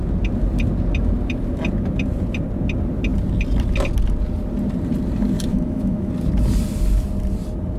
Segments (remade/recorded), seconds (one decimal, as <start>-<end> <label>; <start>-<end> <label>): 0.0-5.5 recorded; 5.5-6.1 remade; 6.1-7.8 recorded